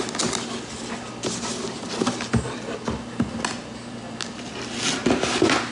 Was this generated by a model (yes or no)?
no